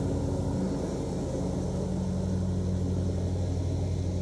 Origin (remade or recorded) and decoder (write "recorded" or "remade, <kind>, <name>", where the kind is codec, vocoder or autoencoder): recorded